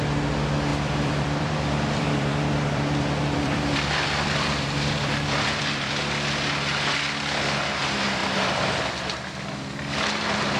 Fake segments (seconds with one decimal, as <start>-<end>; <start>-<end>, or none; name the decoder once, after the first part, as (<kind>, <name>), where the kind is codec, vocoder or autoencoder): 0.7-5.9 (vocoder, BigVGAN v2)